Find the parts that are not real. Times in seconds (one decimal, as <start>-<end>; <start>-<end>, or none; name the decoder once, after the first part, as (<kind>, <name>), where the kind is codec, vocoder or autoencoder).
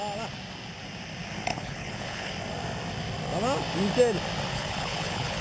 1.5-2.3 (codec, HILCodec); 4.5-5.4